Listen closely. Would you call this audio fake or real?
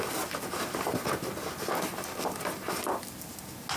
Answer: real